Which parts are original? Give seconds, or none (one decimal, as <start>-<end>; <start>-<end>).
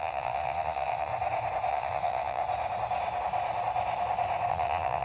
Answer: 1.1-1.7; 2.4-4.5